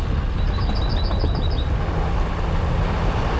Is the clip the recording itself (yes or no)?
yes